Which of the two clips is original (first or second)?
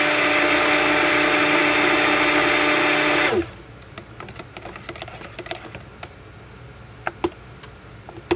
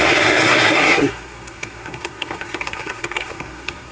first